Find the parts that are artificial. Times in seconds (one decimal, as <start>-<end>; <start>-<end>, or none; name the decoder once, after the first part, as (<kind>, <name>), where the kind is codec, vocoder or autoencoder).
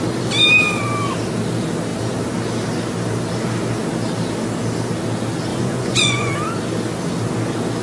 5.5-6.3 (vocoder, Vocos)